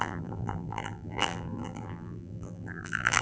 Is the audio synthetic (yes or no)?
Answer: yes